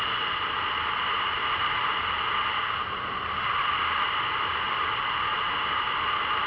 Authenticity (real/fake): real